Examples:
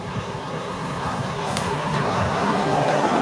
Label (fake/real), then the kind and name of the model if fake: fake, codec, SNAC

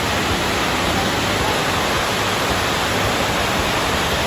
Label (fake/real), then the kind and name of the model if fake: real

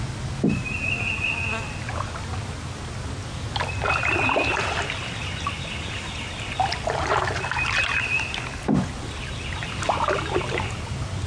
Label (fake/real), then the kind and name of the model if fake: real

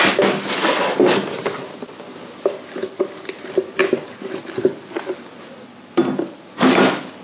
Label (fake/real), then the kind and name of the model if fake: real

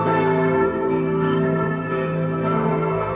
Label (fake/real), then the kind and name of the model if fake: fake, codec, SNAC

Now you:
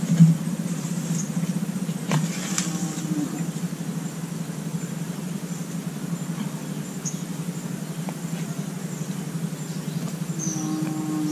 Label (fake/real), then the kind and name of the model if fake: real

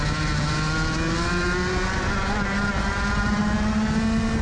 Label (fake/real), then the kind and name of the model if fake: real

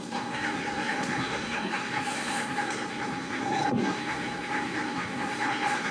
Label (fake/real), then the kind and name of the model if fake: fake, codec, SNAC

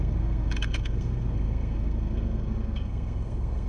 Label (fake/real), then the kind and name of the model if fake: fake, codec, SNAC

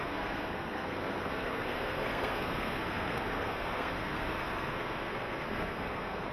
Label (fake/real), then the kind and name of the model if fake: fake, codec, SNAC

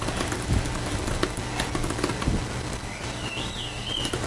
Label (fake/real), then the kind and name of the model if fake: real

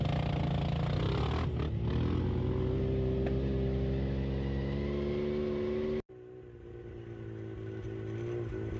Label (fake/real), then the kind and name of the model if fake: real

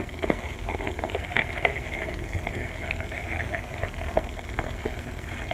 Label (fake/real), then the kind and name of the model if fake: fake, codec, SNAC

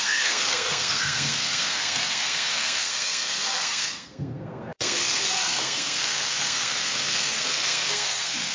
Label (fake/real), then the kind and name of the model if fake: fake, codec, SNAC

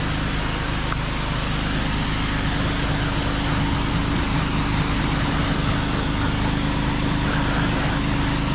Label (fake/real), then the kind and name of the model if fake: real